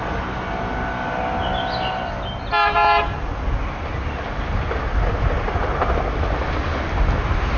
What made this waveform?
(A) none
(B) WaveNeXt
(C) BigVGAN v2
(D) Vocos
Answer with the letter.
A